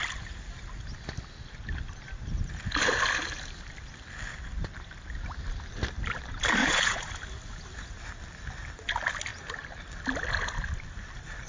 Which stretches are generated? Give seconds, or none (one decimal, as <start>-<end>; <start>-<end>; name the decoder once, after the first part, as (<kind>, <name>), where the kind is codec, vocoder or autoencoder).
6.6-7.1 (vocoder, Vocos)